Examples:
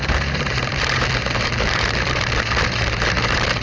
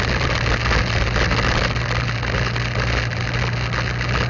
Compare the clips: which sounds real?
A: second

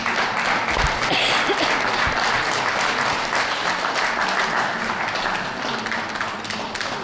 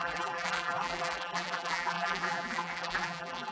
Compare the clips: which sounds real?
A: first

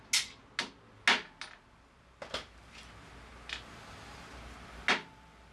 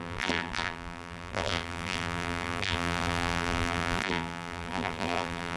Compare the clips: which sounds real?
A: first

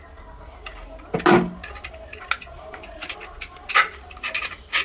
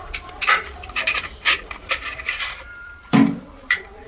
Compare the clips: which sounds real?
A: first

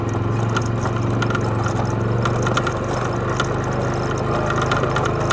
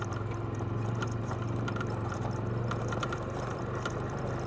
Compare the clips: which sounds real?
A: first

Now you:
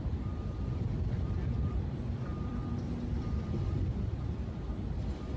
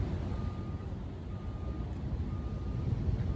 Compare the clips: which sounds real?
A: second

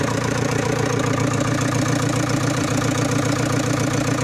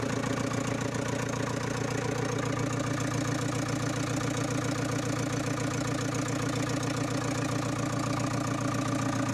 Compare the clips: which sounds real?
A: second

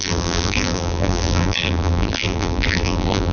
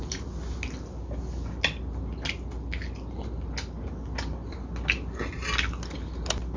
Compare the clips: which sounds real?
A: second